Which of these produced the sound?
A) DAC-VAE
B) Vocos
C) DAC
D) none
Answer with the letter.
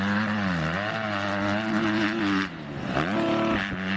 D